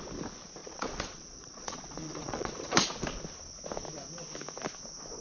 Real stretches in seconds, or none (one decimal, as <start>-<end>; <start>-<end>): 0.0-0.6; 3.0-5.2